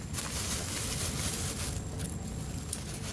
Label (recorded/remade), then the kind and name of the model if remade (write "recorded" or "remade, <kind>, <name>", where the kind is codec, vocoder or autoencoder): recorded